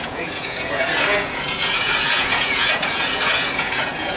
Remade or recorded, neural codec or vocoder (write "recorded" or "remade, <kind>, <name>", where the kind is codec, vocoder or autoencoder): remade, vocoder, Vocos